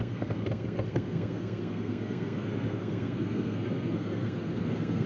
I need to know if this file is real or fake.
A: fake